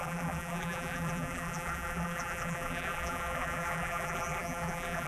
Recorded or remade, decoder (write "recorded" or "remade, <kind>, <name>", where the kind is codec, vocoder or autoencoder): remade, vocoder, BigVGAN v2